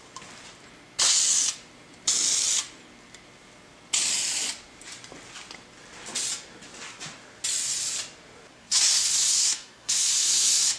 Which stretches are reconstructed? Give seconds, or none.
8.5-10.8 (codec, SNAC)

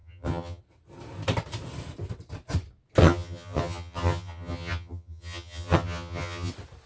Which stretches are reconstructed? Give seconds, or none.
0.0-0.6 (vocoder, HiFi-GAN); 3.0-6.5

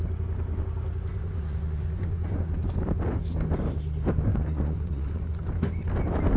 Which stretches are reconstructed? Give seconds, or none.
1.1-2.6 (vocoder, Vocos); 4.3-5.5

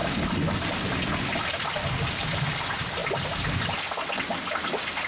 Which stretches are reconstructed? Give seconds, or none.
none

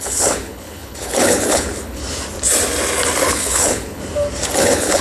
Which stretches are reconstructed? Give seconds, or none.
0.0-2.0 (codec, HILCodec); 3.3-4.0; 4.6-5.0